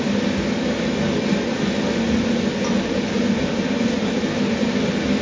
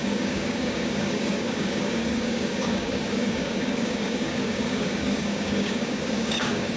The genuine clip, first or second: first